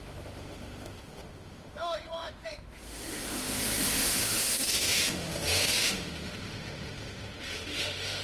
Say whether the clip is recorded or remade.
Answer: remade